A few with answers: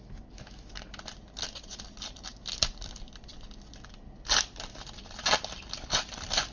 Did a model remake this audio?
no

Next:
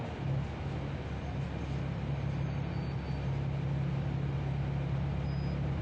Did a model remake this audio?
no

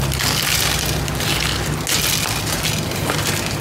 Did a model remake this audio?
no